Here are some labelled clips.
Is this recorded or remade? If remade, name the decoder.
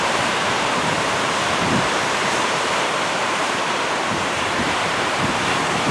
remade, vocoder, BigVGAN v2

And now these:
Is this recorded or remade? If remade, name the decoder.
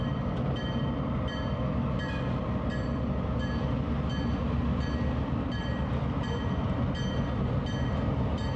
recorded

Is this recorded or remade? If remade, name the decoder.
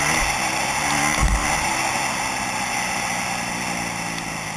recorded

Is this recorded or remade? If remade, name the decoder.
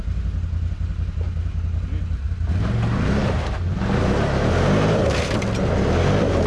recorded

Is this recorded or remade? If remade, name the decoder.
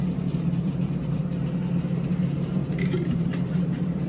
remade, vocoder, BigVGAN v2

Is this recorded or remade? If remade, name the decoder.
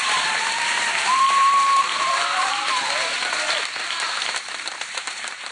remade, vocoder, BigVGAN v2